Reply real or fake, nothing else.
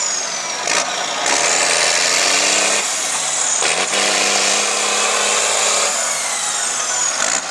real